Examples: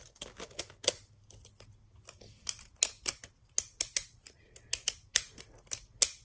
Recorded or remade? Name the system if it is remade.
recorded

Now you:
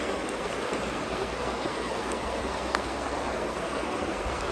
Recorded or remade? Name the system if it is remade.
remade, codec, SNAC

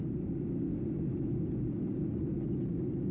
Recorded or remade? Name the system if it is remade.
recorded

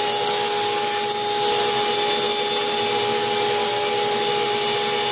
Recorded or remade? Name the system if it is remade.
recorded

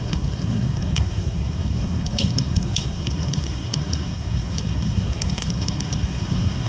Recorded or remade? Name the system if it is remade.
remade, codec, SNAC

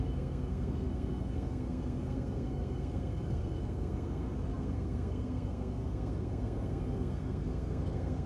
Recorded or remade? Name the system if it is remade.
remade, codec, SNAC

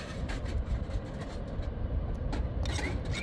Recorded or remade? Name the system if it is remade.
recorded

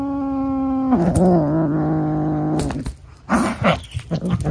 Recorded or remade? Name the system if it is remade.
recorded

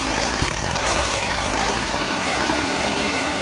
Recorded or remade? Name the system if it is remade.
remade, codec, SNAC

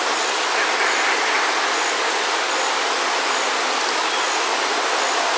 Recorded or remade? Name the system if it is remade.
recorded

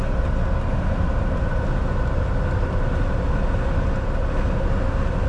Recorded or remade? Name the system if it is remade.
recorded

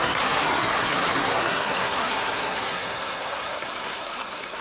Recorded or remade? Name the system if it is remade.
remade, codec, SNAC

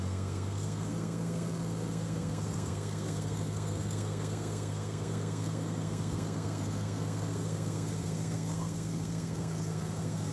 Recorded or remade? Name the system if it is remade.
remade, codec, SNAC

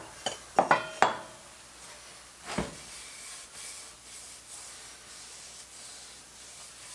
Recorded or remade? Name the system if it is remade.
recorded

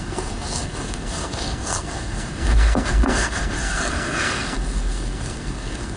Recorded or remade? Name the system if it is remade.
remade, codec, SNAC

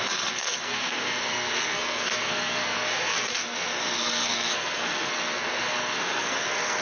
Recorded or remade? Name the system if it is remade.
remade, codec, SNAC